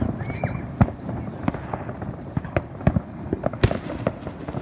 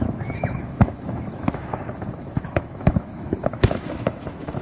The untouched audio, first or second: first